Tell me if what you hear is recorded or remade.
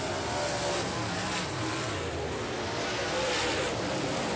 recorded